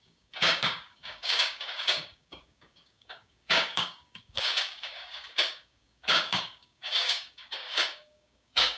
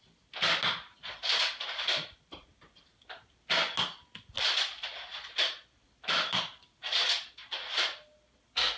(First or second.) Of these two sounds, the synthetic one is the first